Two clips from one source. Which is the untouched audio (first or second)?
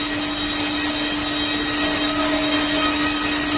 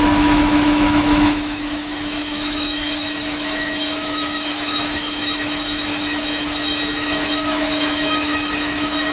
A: first